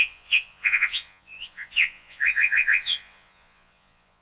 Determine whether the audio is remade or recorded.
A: remade